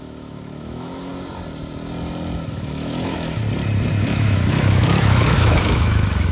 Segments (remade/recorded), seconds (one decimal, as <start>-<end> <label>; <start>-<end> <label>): 0.0-1.1 remade; 1.1-2.5 recorded; 2.5-3.4 remade; 3.4-4.0 recorded; 4.0-6.3 remade